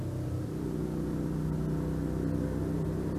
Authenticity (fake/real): real